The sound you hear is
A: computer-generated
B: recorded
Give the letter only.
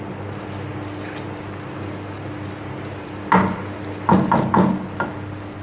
B